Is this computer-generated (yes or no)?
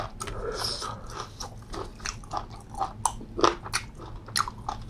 no